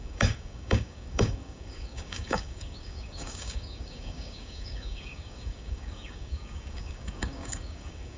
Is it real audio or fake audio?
fake